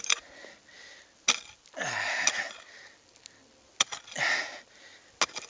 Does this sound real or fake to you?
real